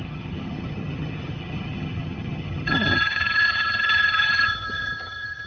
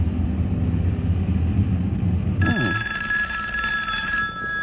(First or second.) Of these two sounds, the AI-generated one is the first